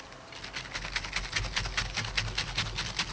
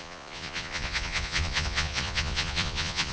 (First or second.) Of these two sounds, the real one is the first